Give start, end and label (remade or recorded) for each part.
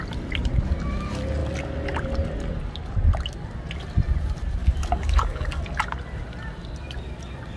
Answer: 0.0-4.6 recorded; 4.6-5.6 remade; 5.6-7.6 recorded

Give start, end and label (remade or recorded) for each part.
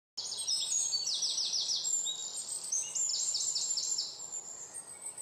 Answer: 0.0-3.1 recorded; 3.1-4.2 remade; 4.2-5.2 recorded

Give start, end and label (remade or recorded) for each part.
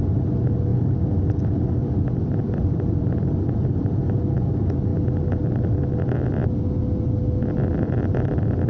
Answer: 0.0-0.7 recorded; 0.7-1.2 remade; 1.2-1.8 recorded; 1.8-4.3 remade; 4.3-8.7 recorded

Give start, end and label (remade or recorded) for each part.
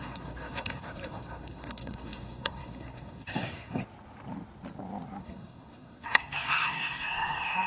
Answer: 0.0-3.8 remade; 3.8-5.2 recorded; 5.2-7.7 remade